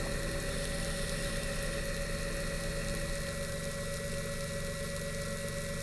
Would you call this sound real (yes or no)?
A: yes